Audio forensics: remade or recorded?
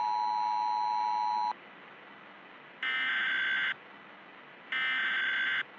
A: recorded